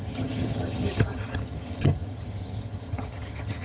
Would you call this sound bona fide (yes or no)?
no